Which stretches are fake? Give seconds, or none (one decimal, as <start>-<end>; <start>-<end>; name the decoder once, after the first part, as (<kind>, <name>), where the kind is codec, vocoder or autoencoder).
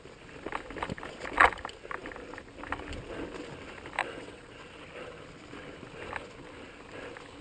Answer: 4.0-4.5 (vocoder, WaveNeXt)